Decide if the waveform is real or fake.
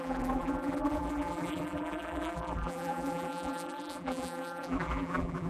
fake